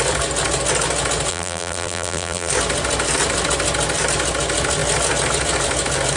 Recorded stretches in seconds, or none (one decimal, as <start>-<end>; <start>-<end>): 0.0-1.3; 2.5-6.2